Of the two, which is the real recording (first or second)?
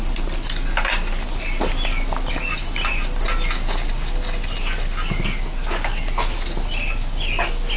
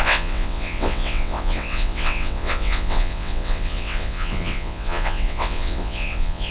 first